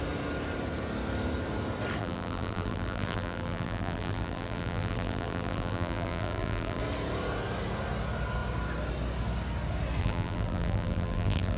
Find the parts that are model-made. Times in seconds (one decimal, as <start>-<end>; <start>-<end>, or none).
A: 2.0-6.8; 10.0-11.6